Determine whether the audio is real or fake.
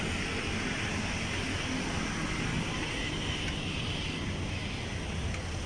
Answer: real